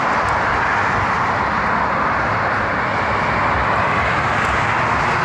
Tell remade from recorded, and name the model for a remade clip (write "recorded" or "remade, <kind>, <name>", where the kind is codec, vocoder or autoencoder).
recorded